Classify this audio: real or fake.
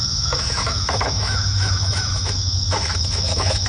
fake